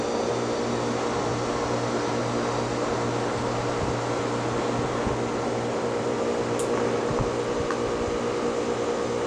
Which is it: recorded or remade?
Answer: recorded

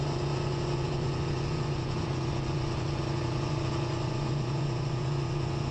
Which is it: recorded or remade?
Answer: remade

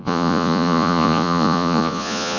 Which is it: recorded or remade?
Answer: remade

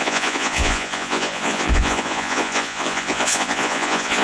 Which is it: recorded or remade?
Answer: remade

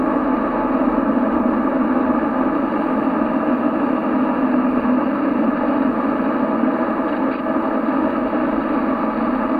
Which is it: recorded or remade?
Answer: recorded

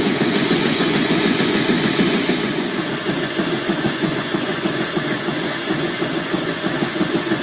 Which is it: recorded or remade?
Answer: remade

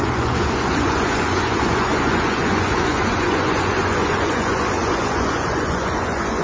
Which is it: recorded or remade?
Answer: remade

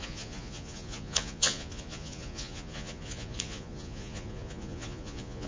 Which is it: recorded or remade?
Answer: remade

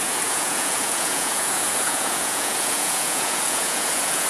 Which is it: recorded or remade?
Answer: remade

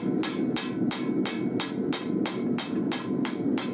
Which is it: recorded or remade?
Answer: recorded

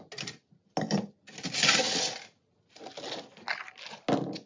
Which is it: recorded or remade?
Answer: recorded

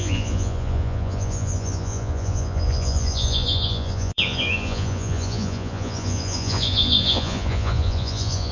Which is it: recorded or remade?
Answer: remade